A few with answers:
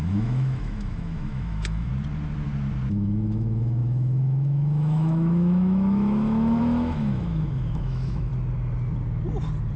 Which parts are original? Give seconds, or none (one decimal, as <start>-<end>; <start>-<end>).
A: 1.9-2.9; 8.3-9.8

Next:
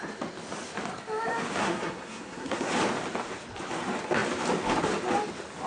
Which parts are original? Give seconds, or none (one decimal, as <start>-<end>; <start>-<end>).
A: 0.0-1.6; 2.7-5.7

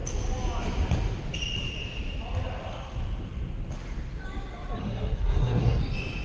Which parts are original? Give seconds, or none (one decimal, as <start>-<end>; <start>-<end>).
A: 0.0-4.8; 5.8-6.2

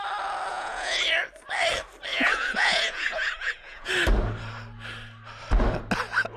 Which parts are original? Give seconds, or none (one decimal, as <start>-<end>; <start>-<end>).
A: 0.0-0.5; 1.0-2.1; 3.9-6.4

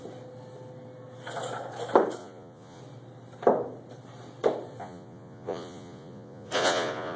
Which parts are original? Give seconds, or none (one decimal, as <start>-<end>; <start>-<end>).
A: 0.0-2.2; 2.8-4.8